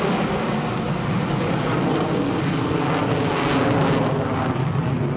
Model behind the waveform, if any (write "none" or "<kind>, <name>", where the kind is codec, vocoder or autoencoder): none